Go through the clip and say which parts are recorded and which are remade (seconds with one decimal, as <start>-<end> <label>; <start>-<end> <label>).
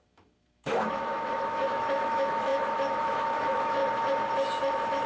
0.0-3.8 remade; 3.8-4.6 recorded; 4.6-5.1 remade